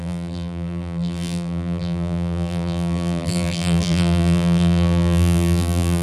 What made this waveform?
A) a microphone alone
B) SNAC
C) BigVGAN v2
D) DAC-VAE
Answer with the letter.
C